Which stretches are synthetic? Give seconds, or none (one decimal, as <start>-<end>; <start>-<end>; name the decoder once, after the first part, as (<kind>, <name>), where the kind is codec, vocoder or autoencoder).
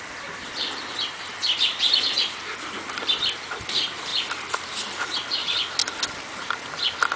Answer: 1.3-3.0 (vocoder, BigVGAN v2); 4.1-4.9; 5.4-6.4